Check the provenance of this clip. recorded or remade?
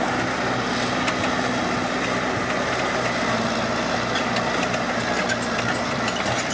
recorded